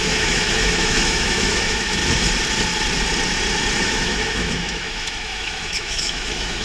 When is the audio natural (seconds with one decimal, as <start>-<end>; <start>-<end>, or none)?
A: 2.0-3.8